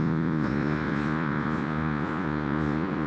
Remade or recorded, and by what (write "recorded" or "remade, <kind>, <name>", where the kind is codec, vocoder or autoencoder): remade, vocoder, Vocos